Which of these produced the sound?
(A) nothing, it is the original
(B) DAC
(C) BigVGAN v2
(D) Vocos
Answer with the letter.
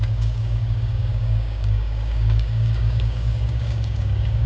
B